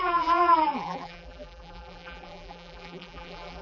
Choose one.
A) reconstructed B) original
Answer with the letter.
A